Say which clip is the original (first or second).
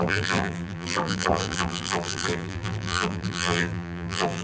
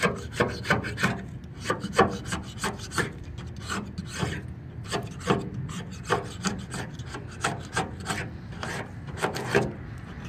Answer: second